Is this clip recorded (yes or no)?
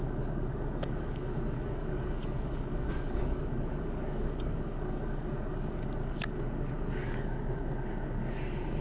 no